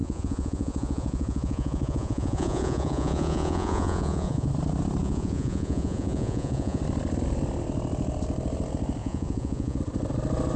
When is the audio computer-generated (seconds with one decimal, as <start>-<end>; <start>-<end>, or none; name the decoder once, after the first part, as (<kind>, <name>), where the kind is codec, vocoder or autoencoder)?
0.0-4.5 (vocoder, Vocos); 5.0-6.8; 9.0-9.8